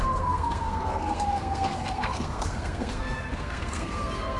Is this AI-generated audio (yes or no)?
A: yes